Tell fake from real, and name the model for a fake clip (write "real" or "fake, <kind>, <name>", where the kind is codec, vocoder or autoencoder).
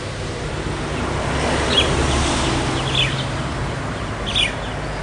real